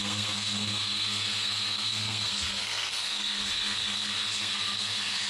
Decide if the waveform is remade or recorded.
remade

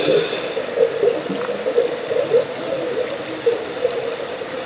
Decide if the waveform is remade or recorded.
recorded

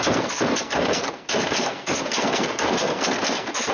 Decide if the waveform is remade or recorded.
remade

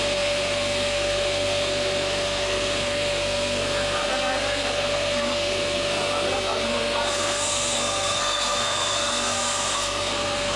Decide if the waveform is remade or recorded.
remade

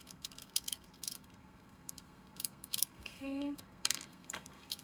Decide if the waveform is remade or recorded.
remade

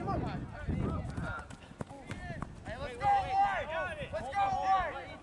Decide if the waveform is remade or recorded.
recorded